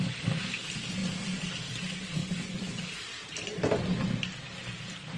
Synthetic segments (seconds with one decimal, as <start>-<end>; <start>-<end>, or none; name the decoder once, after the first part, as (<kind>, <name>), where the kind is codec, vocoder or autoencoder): none